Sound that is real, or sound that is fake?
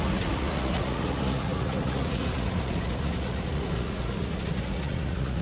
fake